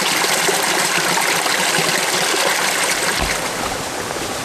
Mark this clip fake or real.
real